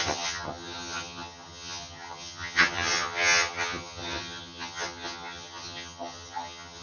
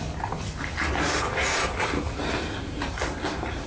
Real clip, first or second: second